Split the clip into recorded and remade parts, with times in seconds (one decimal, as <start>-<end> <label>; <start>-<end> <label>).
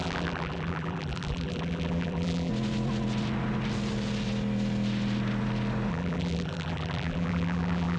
0.0-2.5 remade; 2.5-5.9 recorded; 5.9-8.0 remade